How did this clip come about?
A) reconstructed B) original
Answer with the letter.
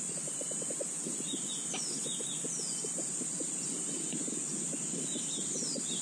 B